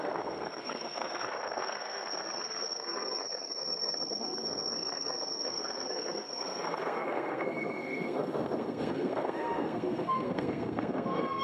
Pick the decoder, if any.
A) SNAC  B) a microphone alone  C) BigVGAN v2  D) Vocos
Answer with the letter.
A